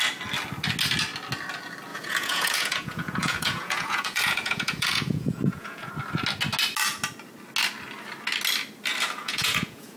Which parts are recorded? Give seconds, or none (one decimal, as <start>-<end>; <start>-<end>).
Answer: 0.0-1.9; 5.9-9.2